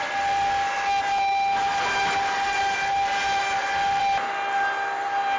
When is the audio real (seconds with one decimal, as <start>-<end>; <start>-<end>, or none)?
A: 0.0-5.4